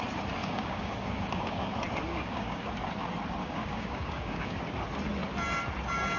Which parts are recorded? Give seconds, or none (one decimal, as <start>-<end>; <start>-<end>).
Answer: 0.0-0.4; 1.7-2.1; 2.7-3.4; 4.6-6.2